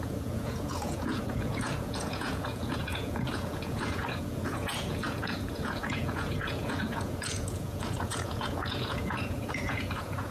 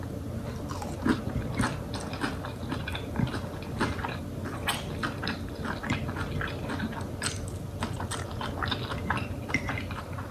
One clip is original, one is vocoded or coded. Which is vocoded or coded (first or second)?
first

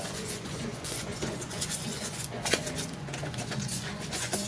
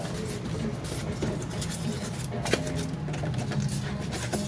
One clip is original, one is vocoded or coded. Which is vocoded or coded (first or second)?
first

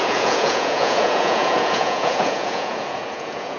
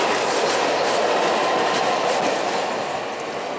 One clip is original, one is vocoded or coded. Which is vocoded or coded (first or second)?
first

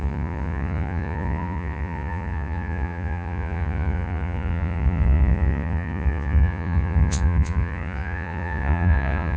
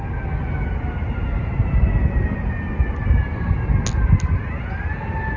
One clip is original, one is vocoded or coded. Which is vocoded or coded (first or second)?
first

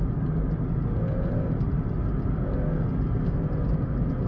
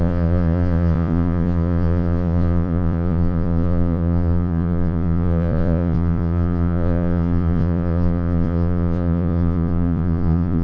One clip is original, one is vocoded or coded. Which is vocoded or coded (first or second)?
second